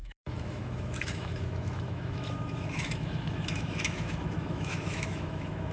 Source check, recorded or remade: remade